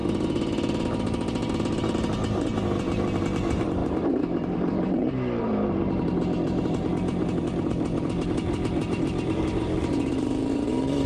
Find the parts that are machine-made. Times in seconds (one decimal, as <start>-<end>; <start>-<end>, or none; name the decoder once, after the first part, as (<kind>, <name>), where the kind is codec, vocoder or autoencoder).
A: 0.0-11.1 (vocoder, BigVGAN v2)